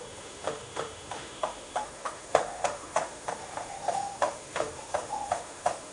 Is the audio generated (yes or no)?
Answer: yes